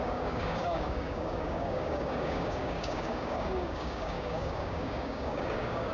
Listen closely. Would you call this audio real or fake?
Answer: fake